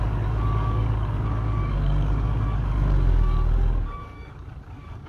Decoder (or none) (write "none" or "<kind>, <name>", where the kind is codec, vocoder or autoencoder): codec, DAC